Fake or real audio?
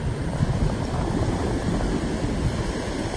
real